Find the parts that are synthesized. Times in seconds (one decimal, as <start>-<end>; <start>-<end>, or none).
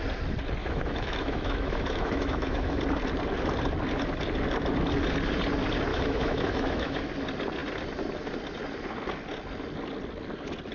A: 0.6-2.8; 5.9-7.1